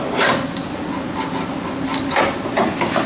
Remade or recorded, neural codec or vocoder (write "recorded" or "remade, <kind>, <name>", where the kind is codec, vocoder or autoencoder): recorded